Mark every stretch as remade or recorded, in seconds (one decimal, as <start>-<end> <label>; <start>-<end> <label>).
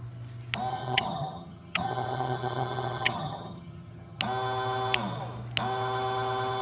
0.0-0.7 recorded; 0.7-4.2 remade; 4.2-6.6 recorded